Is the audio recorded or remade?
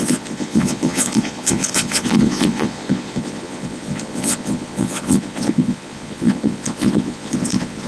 remade